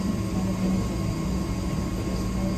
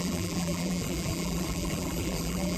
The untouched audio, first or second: first